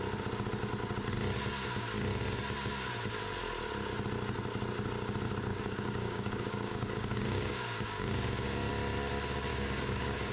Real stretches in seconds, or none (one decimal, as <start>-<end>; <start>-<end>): 0.0-5.5; 8.7-9.5